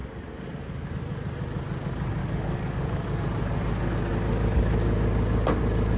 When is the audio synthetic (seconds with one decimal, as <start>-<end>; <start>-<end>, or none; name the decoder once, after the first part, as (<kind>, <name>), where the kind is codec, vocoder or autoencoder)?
0.0-0.9 (codec, DAC); 2.2-3.2